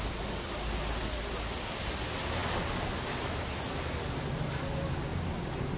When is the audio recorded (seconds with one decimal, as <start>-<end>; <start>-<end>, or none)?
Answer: 0.0-5.8